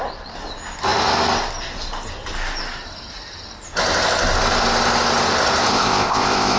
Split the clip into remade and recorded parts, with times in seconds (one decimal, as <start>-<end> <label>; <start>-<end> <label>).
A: 0.0-5.7 recorded; 5.7-6.6 remade